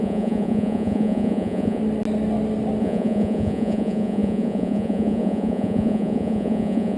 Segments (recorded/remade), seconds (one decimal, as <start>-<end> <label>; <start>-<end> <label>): 0.0-1.8 remade; 1.8-2.8 recorded; 2.8-7.0 remade